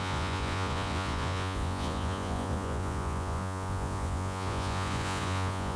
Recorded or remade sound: remade